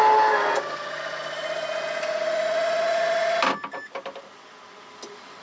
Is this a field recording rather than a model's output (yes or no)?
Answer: yes